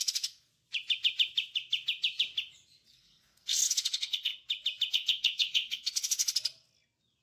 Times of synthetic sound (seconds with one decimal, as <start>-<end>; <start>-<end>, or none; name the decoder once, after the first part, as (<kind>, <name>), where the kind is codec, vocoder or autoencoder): 0.0-0.5 (codec, SNAC); 2.9-4.3; 4.9-6.2

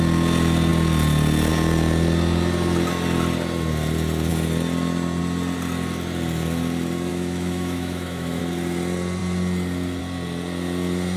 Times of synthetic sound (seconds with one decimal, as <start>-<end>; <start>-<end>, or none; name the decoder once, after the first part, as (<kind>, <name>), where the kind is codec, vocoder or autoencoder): 7.1-8.4 (autoencoder, DAC-VAE)

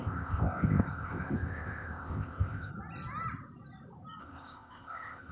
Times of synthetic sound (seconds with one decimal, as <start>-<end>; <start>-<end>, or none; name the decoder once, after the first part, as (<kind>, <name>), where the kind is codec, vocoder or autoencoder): 0.0-2.7 (codec, ZipCodec); 4.2-5.3

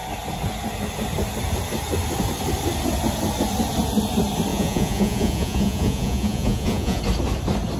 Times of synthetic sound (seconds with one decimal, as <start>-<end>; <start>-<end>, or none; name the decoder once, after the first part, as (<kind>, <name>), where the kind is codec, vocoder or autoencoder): 4.5-7.0 (vocoder, Vocos)

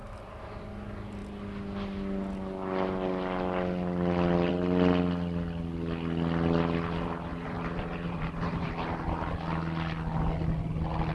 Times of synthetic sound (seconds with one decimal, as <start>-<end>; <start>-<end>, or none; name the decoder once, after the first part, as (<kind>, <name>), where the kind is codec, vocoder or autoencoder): 0.0-0.5 (vocoder, BigVGAN v2); 7.3-8.7

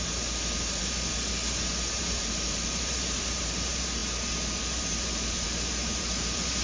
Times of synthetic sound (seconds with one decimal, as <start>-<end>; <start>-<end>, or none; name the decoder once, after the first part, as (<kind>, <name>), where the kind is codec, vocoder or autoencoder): 0.0-0.8 (vocoder, BigVGAN v2); 1.9-4.0; 4.6-6.6